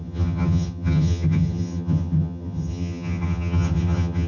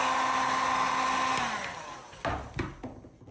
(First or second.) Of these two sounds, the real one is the second